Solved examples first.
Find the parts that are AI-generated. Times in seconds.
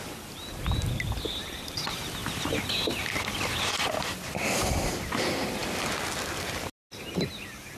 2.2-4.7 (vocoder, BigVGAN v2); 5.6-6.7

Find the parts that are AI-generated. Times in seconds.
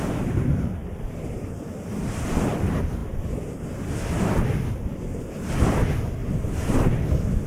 0.8-1.5 (vocoder, BigVGAN v2); 6.2-7.1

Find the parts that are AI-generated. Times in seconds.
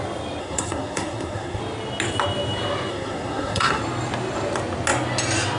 0.4-1.6 (codec, SNAC); 2.9-3.8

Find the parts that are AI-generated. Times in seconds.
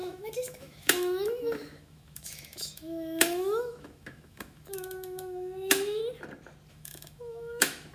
0.0-6.0 (autoencoder, DAC-VAE); 6.7-7.9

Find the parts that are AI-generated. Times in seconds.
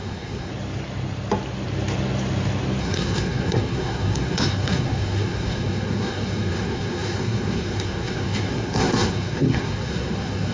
0.0-0.5 (codec, SNAC); 2.8-10.5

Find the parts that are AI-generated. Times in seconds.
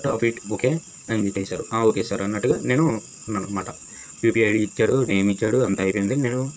1.4-1.9 (vocoder, Vocos); 4.0-6.6